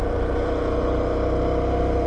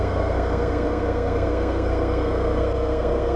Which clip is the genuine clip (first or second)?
first